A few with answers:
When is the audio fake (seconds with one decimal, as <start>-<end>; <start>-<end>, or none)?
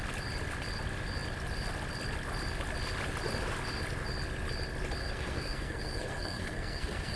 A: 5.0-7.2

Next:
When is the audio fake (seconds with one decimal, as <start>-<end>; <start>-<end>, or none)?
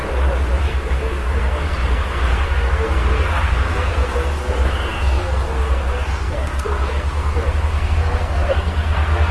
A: 0.6-9.3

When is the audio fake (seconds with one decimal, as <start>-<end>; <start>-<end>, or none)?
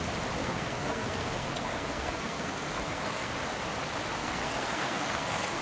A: 0.4-3.3; 4.2-5.6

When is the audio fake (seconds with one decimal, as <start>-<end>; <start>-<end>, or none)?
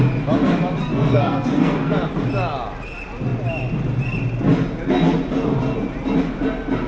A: 0.8-1.9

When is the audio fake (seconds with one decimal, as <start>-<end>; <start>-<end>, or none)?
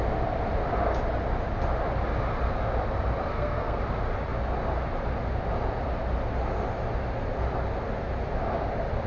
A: 3.3-3.8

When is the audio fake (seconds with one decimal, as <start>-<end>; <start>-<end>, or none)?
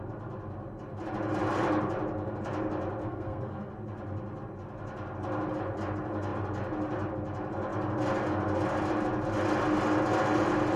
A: 3.0-3.7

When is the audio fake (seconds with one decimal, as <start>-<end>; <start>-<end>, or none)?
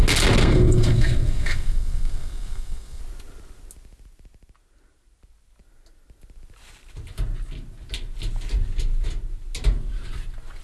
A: 0.4-3.0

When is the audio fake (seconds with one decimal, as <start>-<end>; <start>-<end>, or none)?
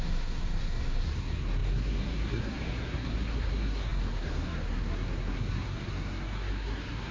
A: 0.0-7.1